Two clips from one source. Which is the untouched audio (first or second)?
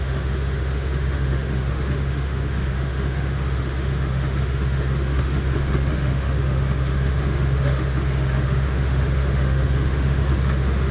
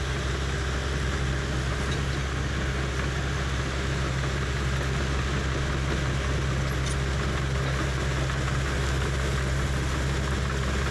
second